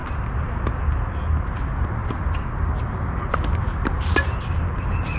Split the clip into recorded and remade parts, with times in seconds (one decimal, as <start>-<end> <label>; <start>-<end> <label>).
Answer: 0.0-5.2 recorded